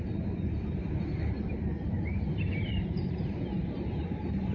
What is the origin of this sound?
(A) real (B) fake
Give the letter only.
B